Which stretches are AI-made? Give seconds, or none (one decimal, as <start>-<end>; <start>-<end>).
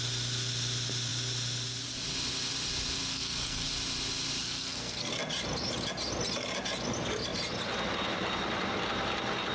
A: 3.1-3.7; 4.4-5.1